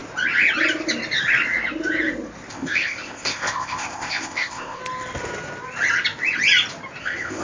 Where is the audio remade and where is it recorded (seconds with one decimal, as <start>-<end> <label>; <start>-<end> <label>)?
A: 0.0-2.5 recorded; 2.5-4.8 remade; 4.8-7.0 recorded; 7.0-7.4 remade